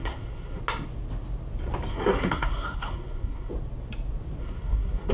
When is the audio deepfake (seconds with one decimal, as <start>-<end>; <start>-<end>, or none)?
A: 0.0-0.6; 1.9-3.5; 4.4-5.1